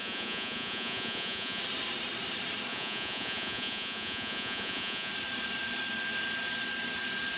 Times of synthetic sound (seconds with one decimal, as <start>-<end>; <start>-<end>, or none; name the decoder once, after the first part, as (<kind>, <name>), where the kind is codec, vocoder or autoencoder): 0.0-1.6 (vocoder, Vocos); 2.7-5.1